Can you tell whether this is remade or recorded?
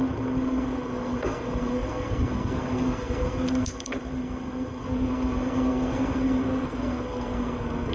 remade